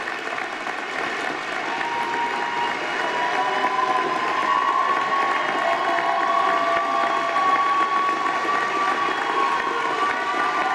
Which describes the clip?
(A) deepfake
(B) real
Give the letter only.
B